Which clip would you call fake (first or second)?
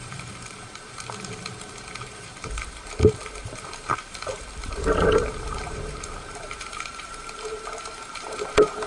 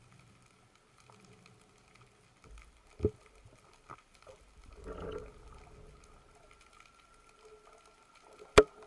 first